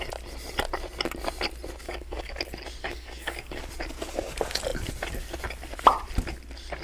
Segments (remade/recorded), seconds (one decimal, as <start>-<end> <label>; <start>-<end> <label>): 0.0-1.8 recorded; 1.8-2.4 remade; 2.4-2.8 recorded; 2.8-3.6 remade; 3.6-6.8 recorded